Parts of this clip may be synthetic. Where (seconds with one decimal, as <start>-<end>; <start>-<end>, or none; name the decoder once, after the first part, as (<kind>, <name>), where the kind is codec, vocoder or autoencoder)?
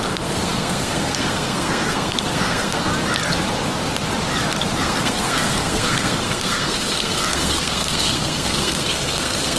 0.0-2.9 (codec, SNAC); 4.8-9.6